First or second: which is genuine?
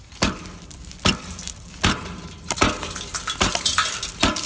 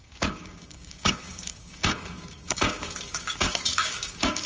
first